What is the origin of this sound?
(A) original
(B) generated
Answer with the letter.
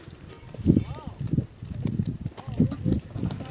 A